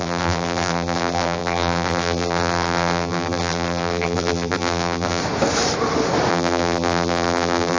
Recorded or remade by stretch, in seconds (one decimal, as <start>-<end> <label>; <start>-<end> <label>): 0.0-5.2 remade; 5.2-6.3 recorded; 6.3-7.8 remade